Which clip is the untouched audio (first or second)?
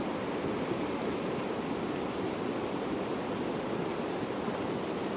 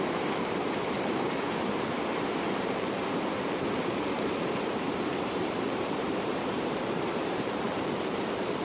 first